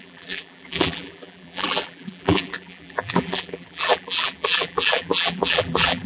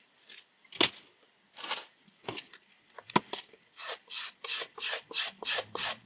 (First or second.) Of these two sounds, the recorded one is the second